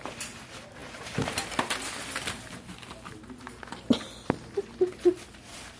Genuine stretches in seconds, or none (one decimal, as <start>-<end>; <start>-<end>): 0.0-5.8